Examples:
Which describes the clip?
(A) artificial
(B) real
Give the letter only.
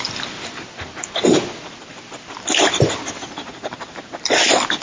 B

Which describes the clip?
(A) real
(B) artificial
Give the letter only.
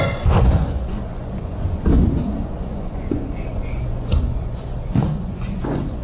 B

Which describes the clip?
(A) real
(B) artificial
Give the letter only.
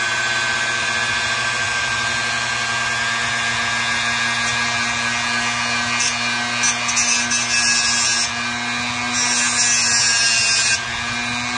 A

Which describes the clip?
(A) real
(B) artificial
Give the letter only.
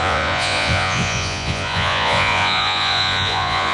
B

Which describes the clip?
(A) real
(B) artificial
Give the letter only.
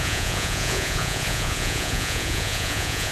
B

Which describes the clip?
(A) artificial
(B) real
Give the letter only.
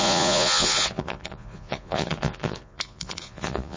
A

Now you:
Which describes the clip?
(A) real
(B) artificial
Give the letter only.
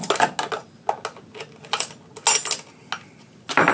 A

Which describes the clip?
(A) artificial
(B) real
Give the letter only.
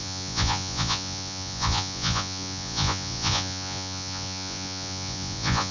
A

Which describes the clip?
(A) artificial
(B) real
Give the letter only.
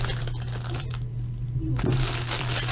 B